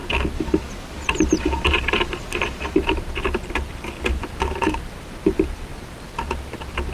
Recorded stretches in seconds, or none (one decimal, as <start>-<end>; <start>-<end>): 0.0-0.7; 3.2-4.3; 5.7-6.9